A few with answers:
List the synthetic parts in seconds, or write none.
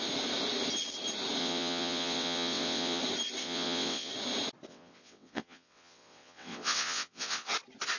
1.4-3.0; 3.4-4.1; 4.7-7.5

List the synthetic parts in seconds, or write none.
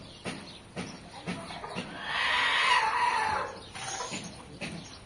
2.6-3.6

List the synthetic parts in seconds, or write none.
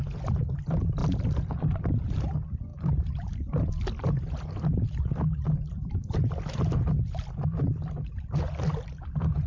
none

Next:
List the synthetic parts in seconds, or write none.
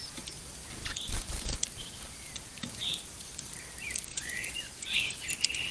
2.5-3.1; 4.1-5.2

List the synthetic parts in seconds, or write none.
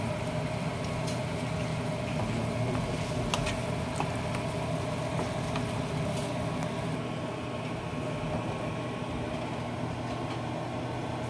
none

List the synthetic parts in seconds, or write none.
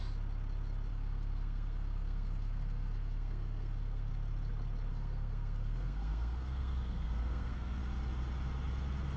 0.9-4.1; 4.9-7.8